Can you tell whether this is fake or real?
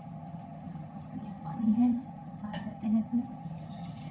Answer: fake